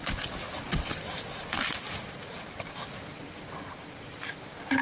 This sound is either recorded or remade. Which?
recorded